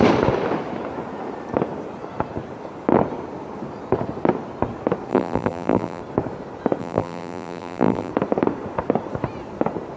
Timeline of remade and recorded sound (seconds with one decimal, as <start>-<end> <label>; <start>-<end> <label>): 0.0-5.1 recorded; 5.1-6.0 remade; 6.0-6.8 recorded; 6.8-8.1 remade; 8.1-10.0 recorded